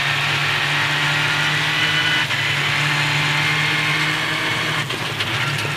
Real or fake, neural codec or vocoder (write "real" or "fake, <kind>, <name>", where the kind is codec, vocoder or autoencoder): real